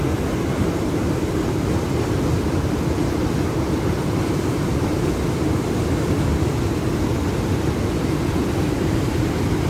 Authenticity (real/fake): real